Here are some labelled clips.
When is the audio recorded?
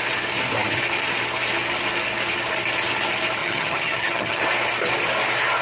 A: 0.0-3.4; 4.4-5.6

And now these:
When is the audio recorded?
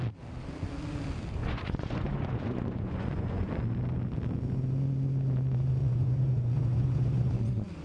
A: 0.0-1.4; 3.5-5.8; 7.3-7.8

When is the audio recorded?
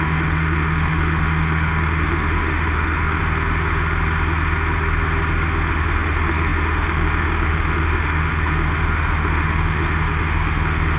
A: 3.2-5.7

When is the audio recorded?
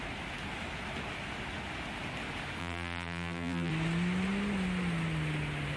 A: 0.0-2.6; 3.7-5.8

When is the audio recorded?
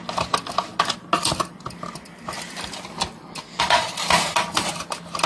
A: 0.0-5.3